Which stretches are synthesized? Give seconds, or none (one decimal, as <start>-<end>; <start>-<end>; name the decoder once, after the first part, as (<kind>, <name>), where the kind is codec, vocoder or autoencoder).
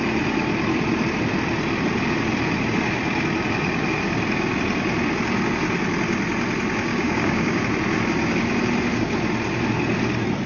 6.9-7.6 (codec, DAC)